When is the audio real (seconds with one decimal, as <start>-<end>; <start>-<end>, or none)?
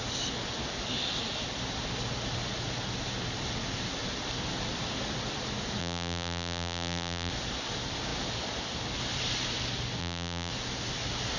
0.0-5.8; 7.3-10.0; 10.5-11.4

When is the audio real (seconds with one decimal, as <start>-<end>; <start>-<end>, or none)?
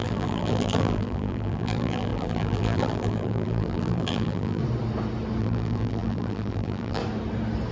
4.6-5.4; 7.0-7.7